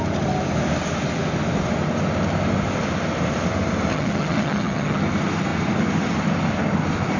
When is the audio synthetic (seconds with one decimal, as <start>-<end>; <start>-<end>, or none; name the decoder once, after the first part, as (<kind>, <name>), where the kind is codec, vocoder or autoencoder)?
3.9-5.0 (vocoder, HiFi-GAN)